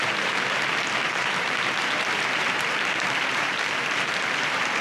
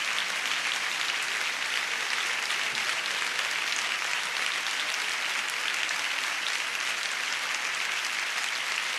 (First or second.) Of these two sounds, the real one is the second